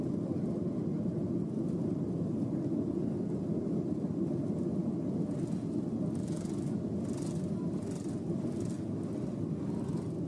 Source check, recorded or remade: recorded